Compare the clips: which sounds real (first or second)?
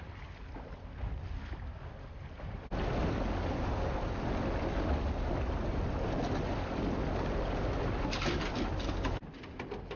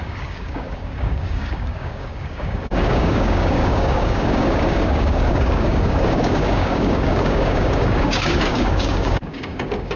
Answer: first